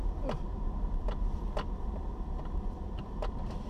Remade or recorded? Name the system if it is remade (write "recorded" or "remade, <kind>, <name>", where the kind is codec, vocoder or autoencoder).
recorded